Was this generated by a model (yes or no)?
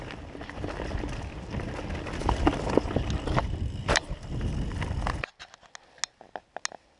no